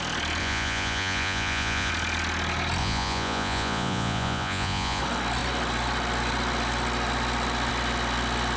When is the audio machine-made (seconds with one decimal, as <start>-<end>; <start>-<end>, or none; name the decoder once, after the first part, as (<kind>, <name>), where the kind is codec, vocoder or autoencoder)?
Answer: 0.4-1.9 (vocoder, Vocos); 2.8-5.0